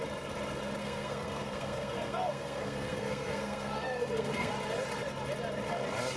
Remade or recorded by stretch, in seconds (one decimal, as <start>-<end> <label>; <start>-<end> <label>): 0.0-0.8 recorded; 0.8-4.5 remade; 4.5-6.2 recorded